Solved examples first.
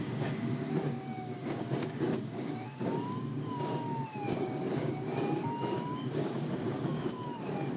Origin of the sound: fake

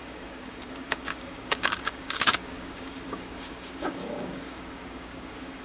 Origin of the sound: fake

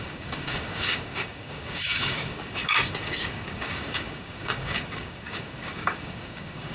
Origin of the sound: fake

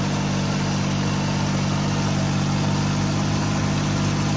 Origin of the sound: real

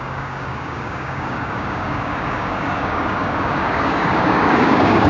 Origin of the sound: fake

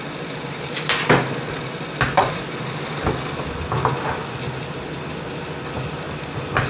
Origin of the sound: real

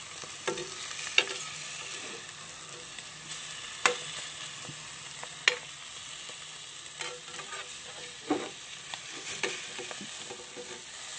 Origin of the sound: real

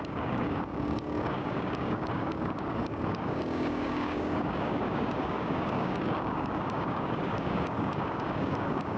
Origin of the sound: fake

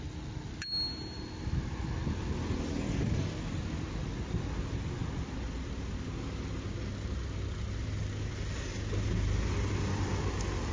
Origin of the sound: real